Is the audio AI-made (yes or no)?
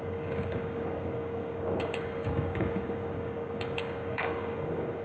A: yes